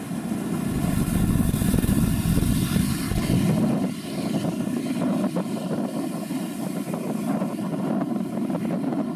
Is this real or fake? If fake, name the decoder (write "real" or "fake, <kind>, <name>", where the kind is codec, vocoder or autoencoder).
real